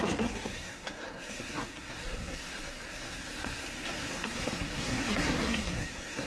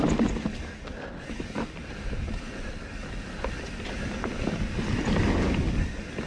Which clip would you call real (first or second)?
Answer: second